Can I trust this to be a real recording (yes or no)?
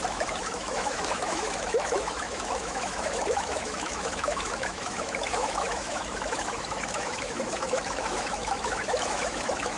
no